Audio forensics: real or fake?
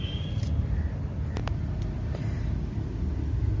real